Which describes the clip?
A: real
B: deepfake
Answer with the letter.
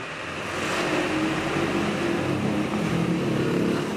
A